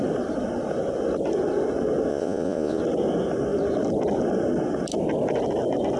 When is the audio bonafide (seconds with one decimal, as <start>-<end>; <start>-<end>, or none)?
0.0-2.1; 2.8-6.0